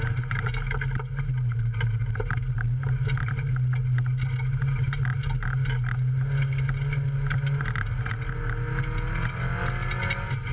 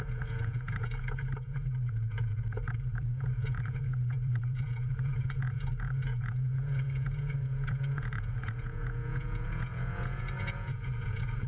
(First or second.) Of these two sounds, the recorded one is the first